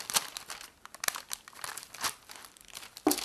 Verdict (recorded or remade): recorded